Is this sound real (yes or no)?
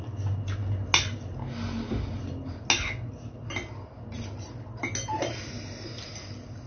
yes